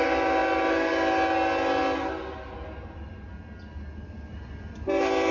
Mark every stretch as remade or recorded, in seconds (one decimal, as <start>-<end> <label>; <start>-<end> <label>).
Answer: 0.0-5.3 recorded